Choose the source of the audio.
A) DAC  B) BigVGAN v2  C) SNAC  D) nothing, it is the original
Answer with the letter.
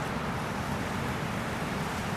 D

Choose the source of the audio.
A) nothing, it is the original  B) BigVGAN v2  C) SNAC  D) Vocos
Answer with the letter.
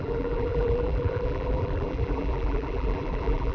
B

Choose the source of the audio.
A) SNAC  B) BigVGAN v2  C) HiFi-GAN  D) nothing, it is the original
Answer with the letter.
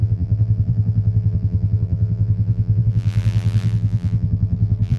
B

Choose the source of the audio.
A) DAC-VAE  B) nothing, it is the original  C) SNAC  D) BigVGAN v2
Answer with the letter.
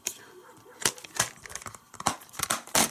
D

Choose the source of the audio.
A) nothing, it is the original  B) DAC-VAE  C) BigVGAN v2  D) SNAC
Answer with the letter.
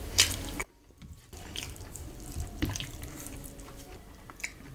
C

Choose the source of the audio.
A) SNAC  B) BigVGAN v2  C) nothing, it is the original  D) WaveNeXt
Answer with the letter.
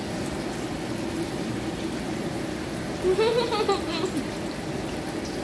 C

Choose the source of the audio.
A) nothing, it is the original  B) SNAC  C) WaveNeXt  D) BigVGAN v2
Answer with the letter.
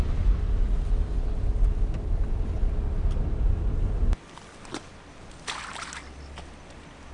A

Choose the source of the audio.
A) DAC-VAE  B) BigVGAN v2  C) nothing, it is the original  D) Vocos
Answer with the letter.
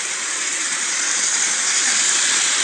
B